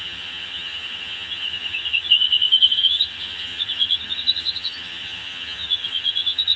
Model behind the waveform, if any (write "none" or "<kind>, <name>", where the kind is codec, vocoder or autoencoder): vocoder, HiFi-GAN